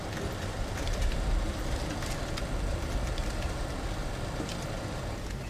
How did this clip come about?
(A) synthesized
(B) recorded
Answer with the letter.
B